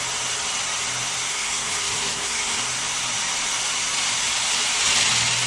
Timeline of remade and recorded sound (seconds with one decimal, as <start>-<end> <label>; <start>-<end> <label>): 0.0-1.3 recorded; 1.3-2.6 remade; 2.6-5.5 recorded